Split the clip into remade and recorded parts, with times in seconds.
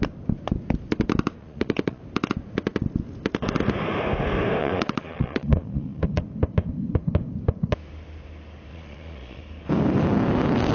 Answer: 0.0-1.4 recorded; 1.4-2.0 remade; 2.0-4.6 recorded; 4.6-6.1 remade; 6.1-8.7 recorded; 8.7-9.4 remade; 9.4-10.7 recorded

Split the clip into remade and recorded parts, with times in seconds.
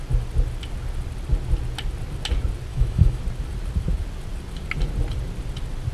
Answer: 0.0-2.7 recorded; 2.7-3.2 remade; 3.2-5.9 recorded